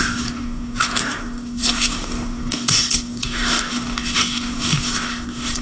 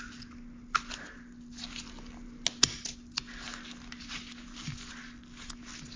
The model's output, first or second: first